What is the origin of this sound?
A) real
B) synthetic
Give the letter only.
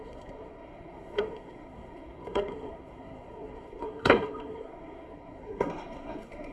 B